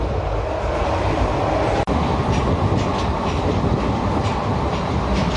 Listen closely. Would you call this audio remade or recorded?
recorded